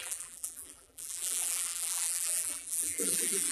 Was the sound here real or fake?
fake